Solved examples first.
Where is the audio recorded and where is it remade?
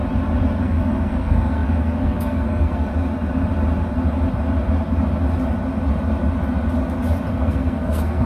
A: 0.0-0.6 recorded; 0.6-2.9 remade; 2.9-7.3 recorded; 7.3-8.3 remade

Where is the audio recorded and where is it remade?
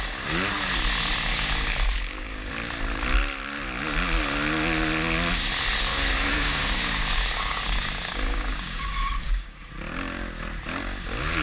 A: 0.0-1.3 recorded; 1.3-2.5 remade; 2.5-5.9 recorded; 5.9-9.7 remade; 9.7-11.4 recorded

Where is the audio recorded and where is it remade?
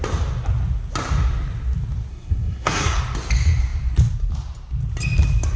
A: 0.0-2.1 recorded; 2.1-3.0 remade; 3.0-5.6 recorded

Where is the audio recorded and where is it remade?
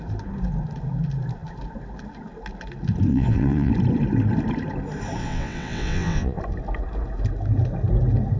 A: 0.0-3.1 recorded; 3.1-3.7 remade; 3.7-5.2 recorded; 5.2-6.4 remade; 6.4-8.4 recorded